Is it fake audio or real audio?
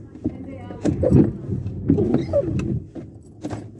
real